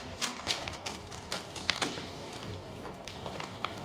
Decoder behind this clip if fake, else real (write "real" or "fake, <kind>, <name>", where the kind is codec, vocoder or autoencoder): fake, codec, DAC